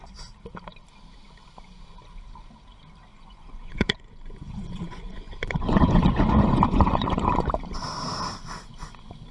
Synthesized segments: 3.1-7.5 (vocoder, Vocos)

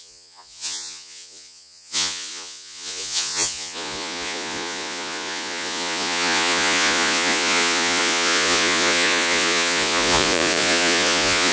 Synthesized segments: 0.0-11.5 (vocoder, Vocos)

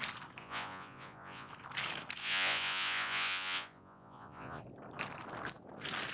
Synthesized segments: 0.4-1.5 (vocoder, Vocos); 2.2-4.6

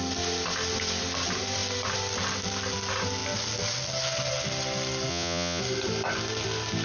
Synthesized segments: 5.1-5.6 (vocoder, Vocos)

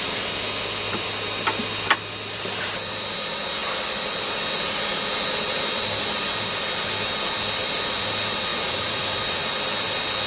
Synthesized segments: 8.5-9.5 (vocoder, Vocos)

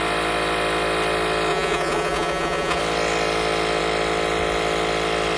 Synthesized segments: 1.5-2.8 (vocoder, Vocos)

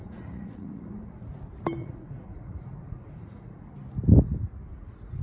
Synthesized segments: 0.0-1.3 (vocoder, Vocos); 1.8-3.7; 4.7-5.2